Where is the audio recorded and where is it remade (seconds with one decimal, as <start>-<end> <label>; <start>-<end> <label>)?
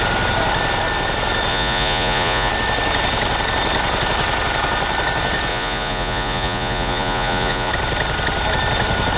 0.0-1.5 recorded; 1.5-2.5 remade; 2.5-5.5 recorded; 5.5-7.7 remade; 7.7-9.2 recorded